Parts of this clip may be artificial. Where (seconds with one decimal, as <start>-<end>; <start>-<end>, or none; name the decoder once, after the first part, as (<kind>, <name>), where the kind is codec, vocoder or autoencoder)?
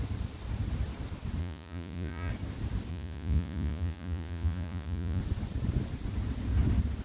1.4-2.3 (vocoder, Vocos); 2.9-5.2